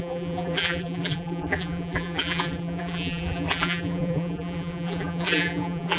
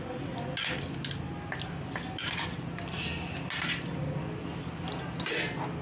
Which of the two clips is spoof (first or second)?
first